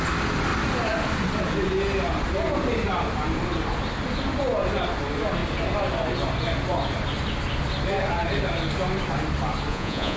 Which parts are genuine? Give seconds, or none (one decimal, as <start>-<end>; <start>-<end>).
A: 0.0-9.7